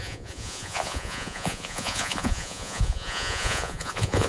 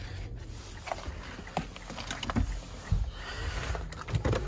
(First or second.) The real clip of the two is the second